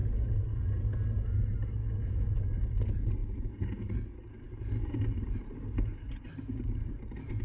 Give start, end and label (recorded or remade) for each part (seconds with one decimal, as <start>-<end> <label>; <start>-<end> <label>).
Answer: 0.0-1.8 recorded; 1.8-2.4 remade; 2.4-7.4 recorded